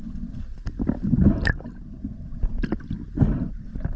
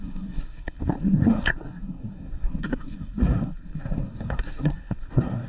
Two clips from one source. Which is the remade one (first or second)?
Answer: second